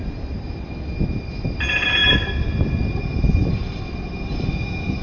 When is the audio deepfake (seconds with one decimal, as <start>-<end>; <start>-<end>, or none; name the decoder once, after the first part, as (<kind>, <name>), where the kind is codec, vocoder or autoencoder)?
none